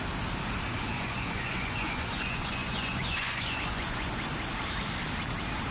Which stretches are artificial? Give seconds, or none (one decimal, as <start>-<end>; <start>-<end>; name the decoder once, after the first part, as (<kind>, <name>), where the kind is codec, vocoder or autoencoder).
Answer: 0.7-4.1 (vocoder, Vocos)